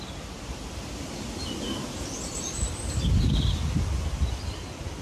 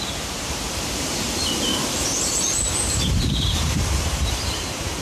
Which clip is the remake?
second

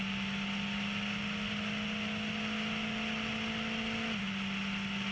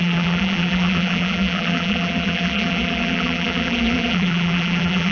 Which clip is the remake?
second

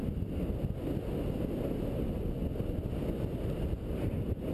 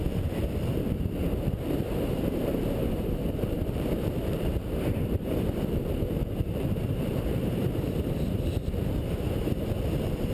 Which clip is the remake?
second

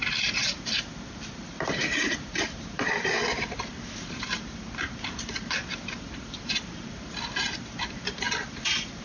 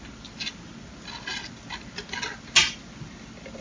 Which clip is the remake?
first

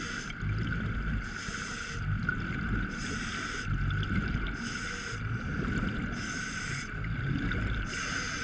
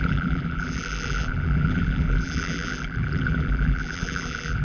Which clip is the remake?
second